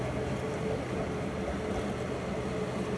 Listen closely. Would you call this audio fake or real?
real